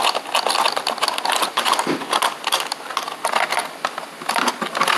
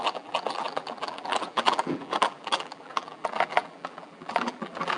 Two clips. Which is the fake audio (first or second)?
second